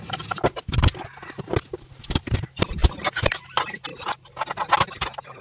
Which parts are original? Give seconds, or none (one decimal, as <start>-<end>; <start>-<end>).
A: 0.0-5.4